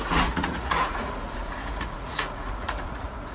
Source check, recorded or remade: remade